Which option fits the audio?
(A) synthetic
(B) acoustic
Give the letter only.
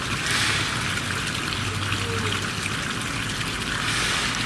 B